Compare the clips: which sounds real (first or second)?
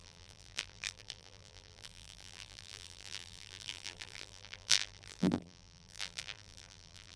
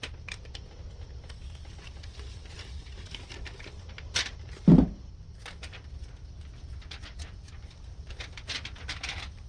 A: second